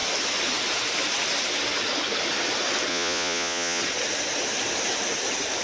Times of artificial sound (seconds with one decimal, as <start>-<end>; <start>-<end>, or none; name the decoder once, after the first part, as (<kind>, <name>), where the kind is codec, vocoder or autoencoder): 2.9-3.8 (vocoder, Vocos)